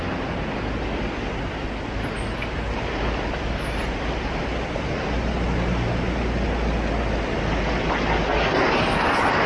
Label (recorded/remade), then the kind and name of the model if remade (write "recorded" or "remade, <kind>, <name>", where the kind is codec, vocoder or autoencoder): recorded